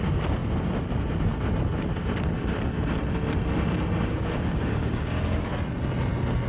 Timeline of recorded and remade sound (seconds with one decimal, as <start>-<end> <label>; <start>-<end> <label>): 0.0-4.1 recorded; 4.1-5.5 remade; 5.5-6.5 recorded

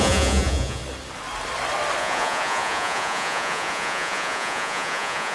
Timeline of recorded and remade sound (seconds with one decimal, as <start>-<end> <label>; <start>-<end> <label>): 0.0-0.8 remade; 0.8-2.0 recorded; 2.0-5.3 remade

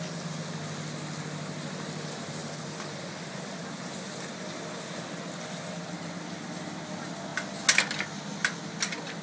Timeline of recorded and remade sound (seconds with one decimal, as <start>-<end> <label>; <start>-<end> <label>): 0.0-2.4 recorded; 2.4-5.0 remade; 5.0-9.2 recorded

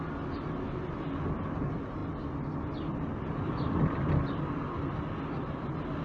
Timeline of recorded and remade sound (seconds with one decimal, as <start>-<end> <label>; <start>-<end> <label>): 0.0-6.0 recorded

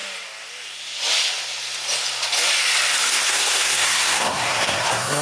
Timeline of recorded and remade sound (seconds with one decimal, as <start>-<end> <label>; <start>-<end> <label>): 0.0-3.1 recorded; 3.1-5.2 remade